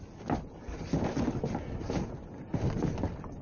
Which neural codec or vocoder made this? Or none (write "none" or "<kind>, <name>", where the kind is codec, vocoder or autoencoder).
none